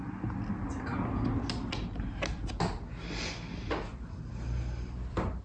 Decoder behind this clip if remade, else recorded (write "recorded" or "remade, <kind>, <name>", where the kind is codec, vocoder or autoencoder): recorded